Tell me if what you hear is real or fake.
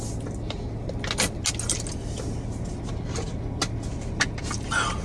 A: real